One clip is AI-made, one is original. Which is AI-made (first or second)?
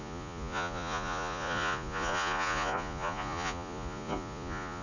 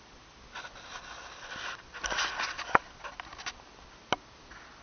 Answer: first